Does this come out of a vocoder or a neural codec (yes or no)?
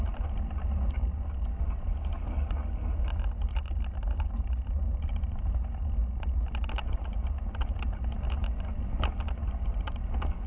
no